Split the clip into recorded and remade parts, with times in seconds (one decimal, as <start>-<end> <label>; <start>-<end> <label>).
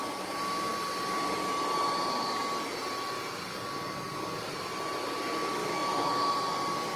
0.0-5.6 recorded; 5.6-6.3 remade; 6.3-7.0 recorded